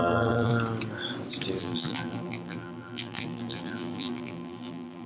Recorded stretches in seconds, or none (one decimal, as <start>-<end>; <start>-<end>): 0.5-1.6